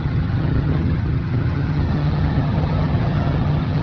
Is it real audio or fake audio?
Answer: fake